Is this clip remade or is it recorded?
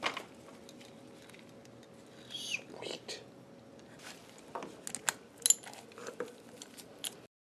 recorded